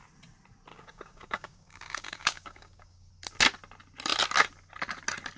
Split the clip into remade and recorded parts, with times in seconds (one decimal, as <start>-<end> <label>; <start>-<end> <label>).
0.0-0.7 recorded; 0.7-3.1 remade; 3.1-5.4 recorded